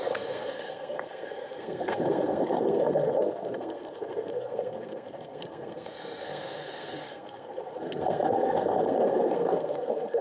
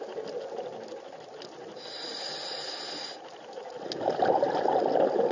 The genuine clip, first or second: second